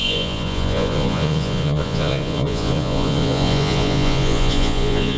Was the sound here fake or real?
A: fake